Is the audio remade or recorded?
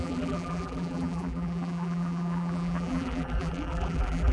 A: remade